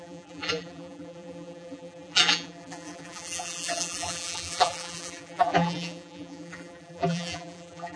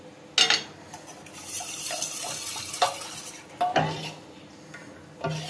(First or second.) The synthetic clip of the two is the first